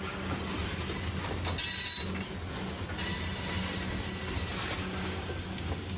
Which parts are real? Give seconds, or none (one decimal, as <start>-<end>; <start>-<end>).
0.0-4.8